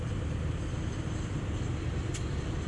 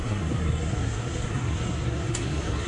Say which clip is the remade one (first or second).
second